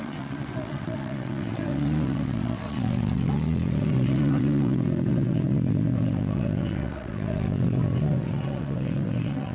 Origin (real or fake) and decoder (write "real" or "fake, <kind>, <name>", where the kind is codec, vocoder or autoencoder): fake, vocoder, WaveNeXt